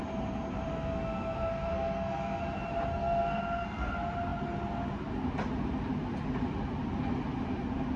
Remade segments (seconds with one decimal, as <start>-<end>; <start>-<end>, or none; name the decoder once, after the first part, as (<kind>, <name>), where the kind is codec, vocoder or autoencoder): 0.7-2.4 (codec, SNAC); 2.9-3.9